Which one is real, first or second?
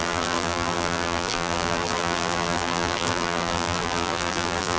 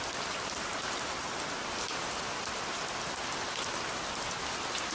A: second